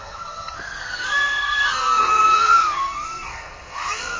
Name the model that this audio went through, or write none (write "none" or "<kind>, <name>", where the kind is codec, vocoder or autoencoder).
codec, SNAC